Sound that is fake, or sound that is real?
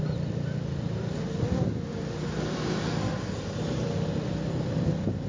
real